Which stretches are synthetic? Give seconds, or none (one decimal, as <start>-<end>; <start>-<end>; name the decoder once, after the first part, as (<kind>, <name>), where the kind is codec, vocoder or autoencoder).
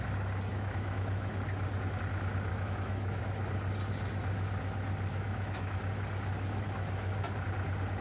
0.5-1.3 (autoencoder, DAC-VAE); 2.5-3.2; 5.1-5.8